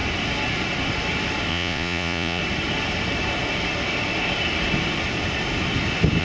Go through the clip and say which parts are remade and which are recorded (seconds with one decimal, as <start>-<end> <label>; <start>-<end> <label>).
0.0-1.5 recorded; 1.5-2.4 remade; 2.4-6.2 recorded